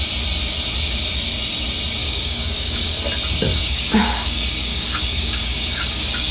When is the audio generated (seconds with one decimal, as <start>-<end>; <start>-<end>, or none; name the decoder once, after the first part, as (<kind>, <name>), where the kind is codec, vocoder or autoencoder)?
2.0-3.0 (codec, DAC); 3.5-6.3